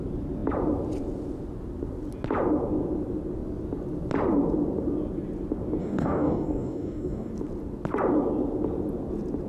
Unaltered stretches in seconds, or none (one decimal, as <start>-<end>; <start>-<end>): 0.0-5.8; 7.3-9.5